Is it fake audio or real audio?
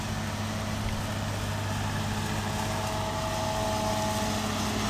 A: real